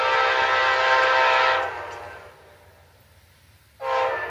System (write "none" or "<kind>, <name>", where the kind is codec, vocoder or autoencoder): none